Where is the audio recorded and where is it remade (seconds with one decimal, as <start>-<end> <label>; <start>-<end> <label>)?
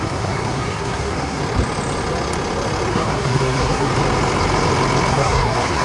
0.0-1.4 remade; 1.4-2.9 recorded; 2.9-3.9 remade; 3.9-5.1 recorded; 5.1-5.8 remade